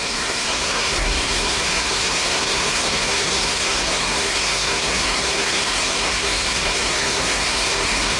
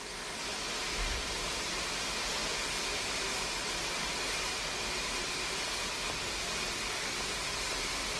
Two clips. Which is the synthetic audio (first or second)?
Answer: first